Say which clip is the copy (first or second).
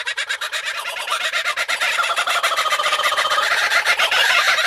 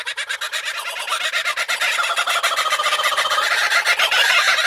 first